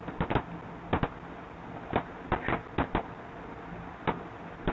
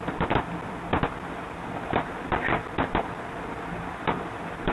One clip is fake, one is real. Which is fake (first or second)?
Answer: second